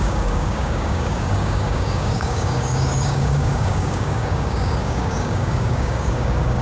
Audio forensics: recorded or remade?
remade